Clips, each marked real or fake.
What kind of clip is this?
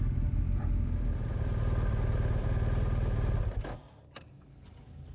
real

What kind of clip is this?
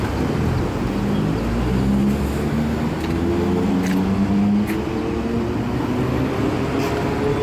real